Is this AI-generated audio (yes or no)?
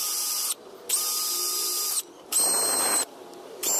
no